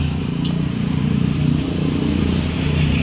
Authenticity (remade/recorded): remade